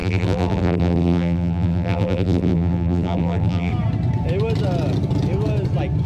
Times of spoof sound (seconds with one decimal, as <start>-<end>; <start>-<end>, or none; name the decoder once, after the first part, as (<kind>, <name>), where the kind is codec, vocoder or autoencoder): 0.0-3.7 (vocoder, BigVGAN v2)